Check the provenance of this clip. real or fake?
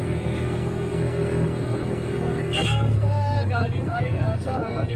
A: fake